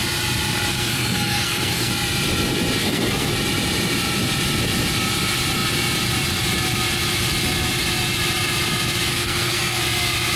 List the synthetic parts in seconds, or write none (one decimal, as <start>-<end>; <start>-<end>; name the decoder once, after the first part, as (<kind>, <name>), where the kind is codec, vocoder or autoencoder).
0.7-1.9 (codec, SNAC); 2.8-3.3; 9.1-9.8